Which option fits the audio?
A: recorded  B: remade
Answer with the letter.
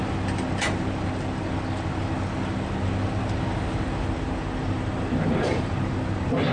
A